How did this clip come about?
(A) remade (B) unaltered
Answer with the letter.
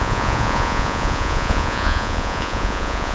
A